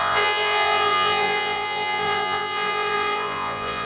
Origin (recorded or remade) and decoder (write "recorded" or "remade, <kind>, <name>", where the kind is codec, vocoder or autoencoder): remade, vocoder, Vocos